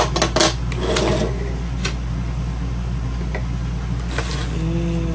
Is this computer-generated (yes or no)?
no